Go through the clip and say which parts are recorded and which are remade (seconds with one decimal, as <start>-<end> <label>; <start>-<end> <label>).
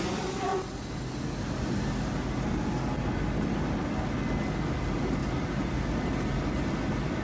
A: 0.0-7.2 recorded